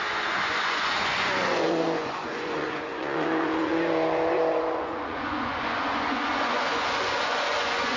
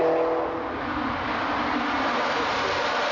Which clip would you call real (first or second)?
second